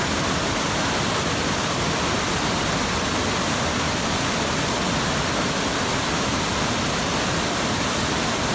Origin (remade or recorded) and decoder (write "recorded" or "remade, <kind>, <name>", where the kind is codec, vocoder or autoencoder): recorded